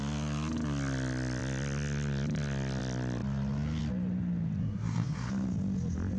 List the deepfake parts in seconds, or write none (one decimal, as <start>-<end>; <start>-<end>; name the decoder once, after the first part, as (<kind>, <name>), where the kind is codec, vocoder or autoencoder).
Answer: 4.6-5.3 (codec, SNAC)